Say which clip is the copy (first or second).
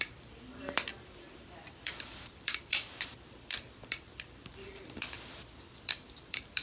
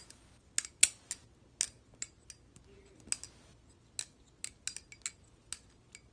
first